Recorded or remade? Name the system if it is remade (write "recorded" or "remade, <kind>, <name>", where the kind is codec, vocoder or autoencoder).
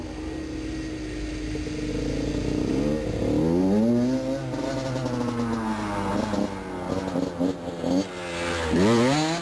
recorded